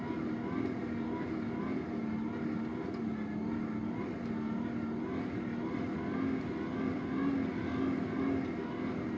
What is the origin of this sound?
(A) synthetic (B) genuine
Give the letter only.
B